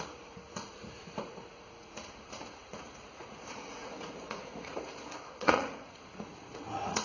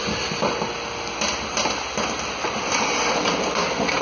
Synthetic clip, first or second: first